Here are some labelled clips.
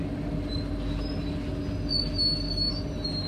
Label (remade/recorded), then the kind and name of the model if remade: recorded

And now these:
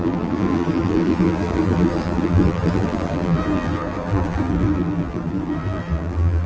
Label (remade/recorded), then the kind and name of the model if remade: remade, vocoder, BigVGAN v2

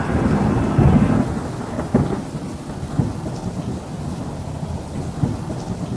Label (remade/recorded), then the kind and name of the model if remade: recorded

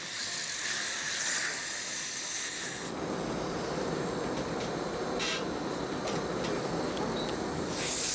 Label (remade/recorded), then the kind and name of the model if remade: recorded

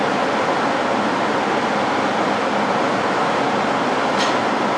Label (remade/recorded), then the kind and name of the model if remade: recorded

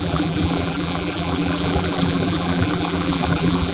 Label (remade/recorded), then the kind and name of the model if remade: remade, vocoder, BigVGAN v2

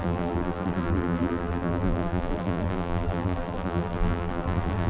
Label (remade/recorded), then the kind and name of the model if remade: remade, vocoder, BigVGAN v2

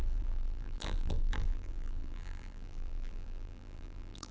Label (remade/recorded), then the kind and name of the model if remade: remade, vocoder, BigVGAN v2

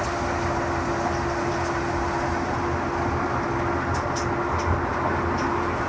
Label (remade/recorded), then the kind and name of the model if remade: recorded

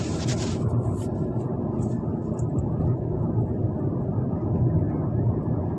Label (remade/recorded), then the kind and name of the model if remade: remade, vocoder, BigVGAN v2